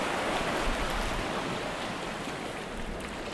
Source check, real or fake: real